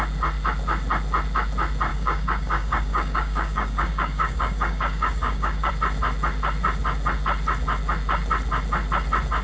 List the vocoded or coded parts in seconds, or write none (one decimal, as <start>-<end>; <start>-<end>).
1.9-5.7